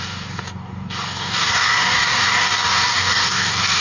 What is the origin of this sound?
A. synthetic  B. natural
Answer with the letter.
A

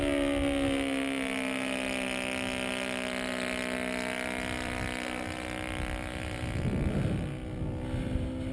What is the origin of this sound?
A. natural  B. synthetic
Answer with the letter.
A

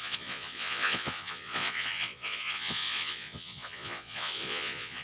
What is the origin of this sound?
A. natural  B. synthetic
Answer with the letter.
B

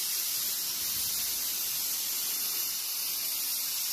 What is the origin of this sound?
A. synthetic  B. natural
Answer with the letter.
B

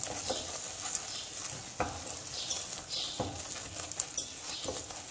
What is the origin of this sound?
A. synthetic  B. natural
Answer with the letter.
B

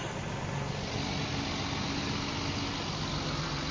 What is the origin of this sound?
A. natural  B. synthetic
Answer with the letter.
A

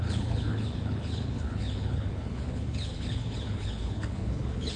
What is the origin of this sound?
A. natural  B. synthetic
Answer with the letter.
B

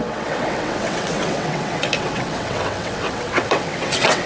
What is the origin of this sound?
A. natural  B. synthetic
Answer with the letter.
B